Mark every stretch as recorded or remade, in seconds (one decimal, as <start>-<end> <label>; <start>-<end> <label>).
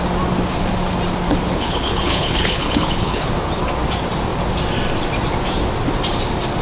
0.0-1.5 recorded; 1.5-3.3 remade; 3.3-6.6 recorded